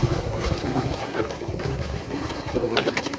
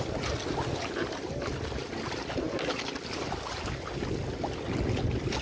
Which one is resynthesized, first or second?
first